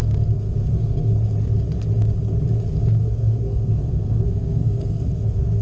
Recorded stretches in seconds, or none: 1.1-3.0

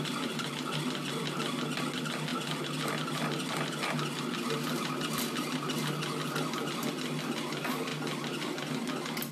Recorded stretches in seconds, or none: 0.0-9.3

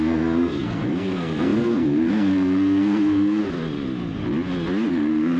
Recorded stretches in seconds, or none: 3.4-4.9

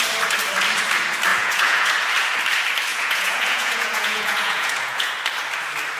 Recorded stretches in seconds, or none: 0.0-1.3; 1.9-2.9; 5.1-6.0

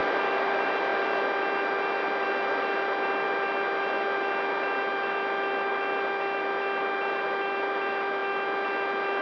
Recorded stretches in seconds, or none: 0.0-9.2

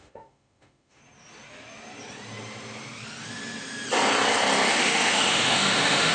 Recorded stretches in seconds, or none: 1.0-4.7

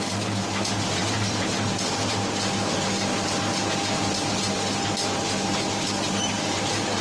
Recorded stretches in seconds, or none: 0.0-7.0

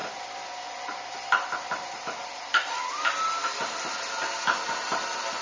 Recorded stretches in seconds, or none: 0.0-5.4